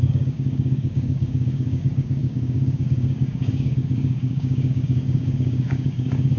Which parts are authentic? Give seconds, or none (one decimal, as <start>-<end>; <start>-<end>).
none